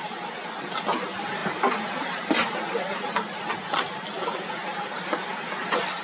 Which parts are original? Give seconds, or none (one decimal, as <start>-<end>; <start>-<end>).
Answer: 0.0-6.0